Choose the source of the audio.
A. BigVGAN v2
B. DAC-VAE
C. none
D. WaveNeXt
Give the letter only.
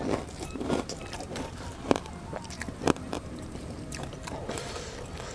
A